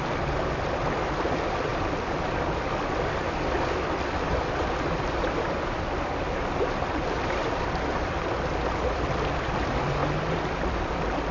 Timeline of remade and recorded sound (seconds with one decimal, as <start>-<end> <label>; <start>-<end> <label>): 0.0-10.0 remade; 10.0-10.7 recorded; 10.7-11.3 remade